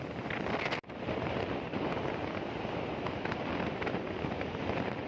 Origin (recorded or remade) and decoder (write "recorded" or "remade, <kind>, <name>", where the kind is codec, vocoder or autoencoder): recorded